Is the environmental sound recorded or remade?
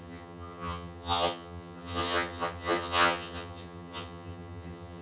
remade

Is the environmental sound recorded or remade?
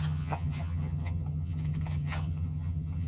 remade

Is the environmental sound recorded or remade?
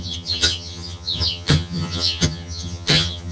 remade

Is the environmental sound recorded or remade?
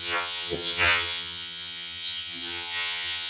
remade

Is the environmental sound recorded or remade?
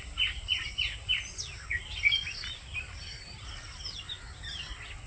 recorded